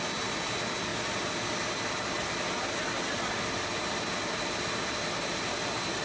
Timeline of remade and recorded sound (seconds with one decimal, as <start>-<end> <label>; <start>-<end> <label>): 0.0-6.0 recorded